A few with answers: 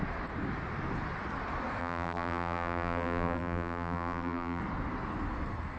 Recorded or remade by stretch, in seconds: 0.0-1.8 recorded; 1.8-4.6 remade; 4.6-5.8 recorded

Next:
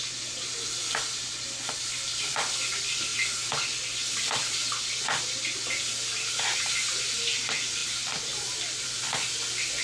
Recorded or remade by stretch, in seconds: 0.0-7.8 recorded; 7.8-8.9 remade; 8.9-9.8 recorded

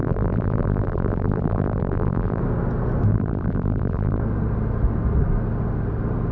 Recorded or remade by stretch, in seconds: 0.0-2.4 remade; 2.4-3.1 recorded; 3.1-4.2 remade; 4.2-6.3 recorded

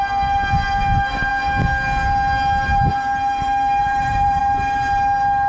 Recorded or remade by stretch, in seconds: 0.0-3.8 recorded; 3.8-4.4 remade; 4.4-5.5 recorded

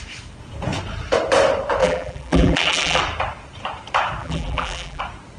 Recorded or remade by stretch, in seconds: 0.0-1.8 recorded; 1.8-3.0 remade; 3.0-4.2 recorded; 4.2-5.0 remade; 5.0-5.4 recorded

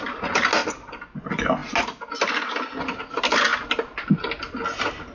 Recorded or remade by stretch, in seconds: 0.0-5.1 recorded